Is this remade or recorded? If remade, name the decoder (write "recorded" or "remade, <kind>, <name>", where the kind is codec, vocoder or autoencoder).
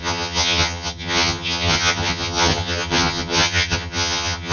remade, vocoder, HiFi-GAN